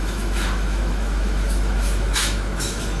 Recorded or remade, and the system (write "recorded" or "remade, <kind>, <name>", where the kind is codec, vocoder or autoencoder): remade, autoencoder, DAC-VAE